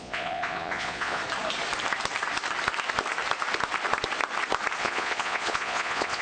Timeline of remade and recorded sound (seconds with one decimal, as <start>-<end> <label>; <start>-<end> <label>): 0.0-1.2 remade; 1.2-4.8 recorded; 4.8-6.2 remade